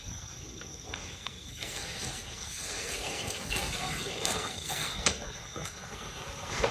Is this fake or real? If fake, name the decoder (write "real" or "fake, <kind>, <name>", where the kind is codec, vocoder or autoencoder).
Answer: fake, codec, SNAC